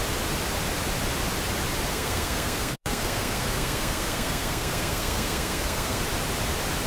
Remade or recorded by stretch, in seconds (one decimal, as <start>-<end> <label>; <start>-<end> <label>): 0.0-1.9 recorded; 1.9-6.0 remade; 6.0-6.9 recorded